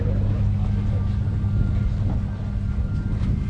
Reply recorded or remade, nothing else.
recorded